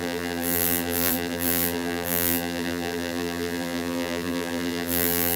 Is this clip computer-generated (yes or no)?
yes